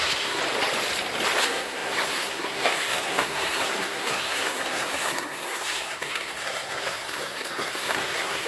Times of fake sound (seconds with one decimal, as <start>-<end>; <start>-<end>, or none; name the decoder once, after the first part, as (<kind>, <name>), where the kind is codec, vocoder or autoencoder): 0.0-0.4 (codec, SNAC); 1.4-8.5